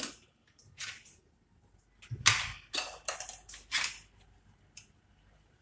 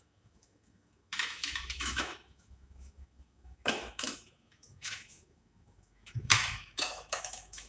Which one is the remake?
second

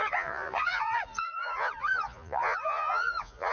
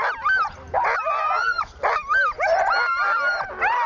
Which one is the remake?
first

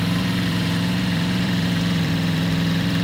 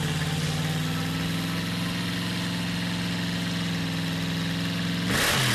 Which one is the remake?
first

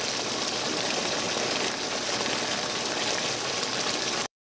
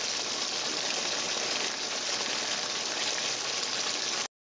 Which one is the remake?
first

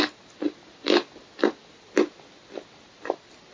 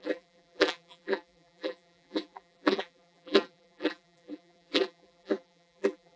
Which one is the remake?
second